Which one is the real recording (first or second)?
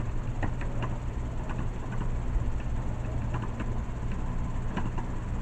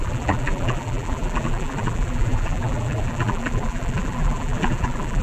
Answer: first